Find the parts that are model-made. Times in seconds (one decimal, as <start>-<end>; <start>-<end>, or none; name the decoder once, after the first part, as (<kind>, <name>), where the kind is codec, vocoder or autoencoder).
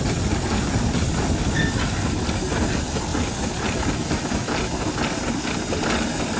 none